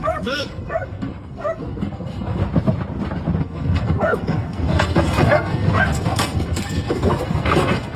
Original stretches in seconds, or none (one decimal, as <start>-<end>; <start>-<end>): 2.4-3.4